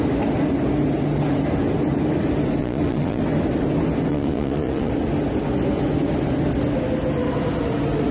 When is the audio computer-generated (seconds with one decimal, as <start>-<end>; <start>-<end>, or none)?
2.6-3.2; 4.1-4.9